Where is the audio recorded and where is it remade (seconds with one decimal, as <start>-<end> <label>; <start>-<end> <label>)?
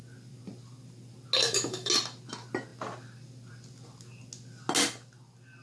0.0-1.4 recorded; 1.4-1.9 remade; 1.9-5.6 recorded